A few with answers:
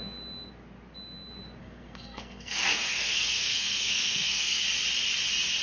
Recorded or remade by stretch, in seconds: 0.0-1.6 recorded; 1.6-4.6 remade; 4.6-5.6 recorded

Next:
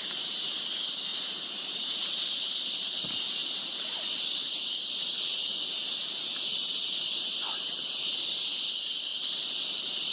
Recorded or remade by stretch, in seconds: 0.0-3.4 remade; 3.4-8.3 recorded; 8.3-9.1 remade; 9.1-10.1 recorded

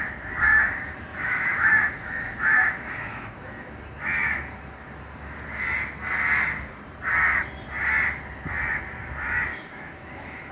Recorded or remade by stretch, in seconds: 0.0-0.5 recorded; 0.5-3.7 remade; 3.7-9.5 recorded; 9.5-10.5 remade

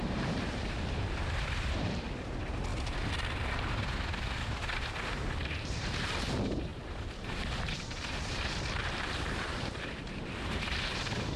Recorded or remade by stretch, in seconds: 0.0-2.7 remade; 2.7-5.6 recorded; 5.6-11.4 remade